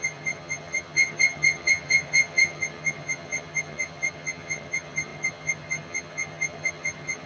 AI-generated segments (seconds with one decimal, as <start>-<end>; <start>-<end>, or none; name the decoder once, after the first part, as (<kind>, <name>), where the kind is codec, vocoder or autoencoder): 0.0-7.3 (vocoder, HiFi-GAN)